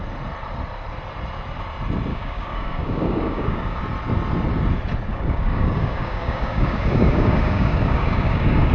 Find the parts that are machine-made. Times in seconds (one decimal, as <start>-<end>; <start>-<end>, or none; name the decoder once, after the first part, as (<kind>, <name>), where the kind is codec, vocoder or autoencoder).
2.1-3.8 (codec, DAC); 5.1-8.7